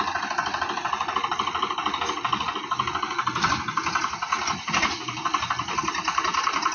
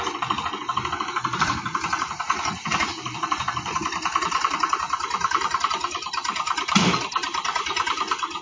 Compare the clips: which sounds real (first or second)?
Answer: first